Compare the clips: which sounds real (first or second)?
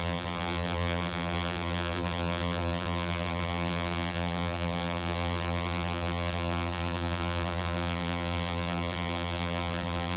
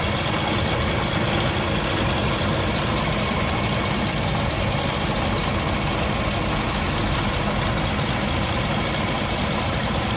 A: second